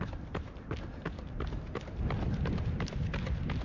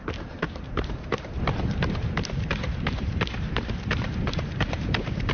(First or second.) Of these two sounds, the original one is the first